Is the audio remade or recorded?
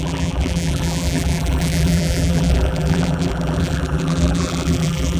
remade